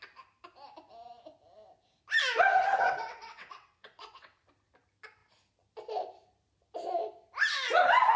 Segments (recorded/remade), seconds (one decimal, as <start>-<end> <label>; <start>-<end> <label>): 0.0-2.7 recorded; 2.7-4.5 remade; 4.5-8.2 recorded